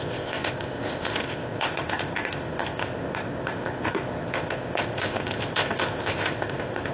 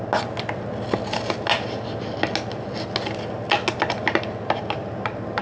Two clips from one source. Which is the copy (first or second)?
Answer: first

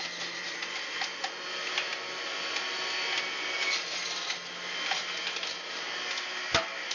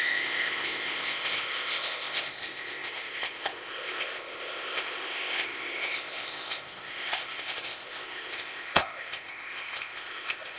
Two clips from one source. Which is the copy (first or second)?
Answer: second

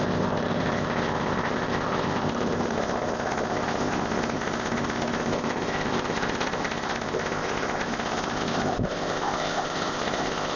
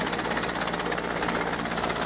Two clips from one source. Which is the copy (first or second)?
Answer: first